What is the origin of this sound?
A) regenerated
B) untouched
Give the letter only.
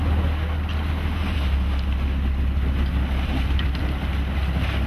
B